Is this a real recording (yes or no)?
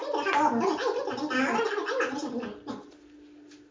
yes